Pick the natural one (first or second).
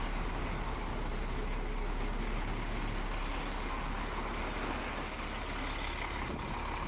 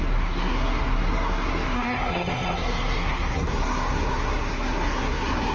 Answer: first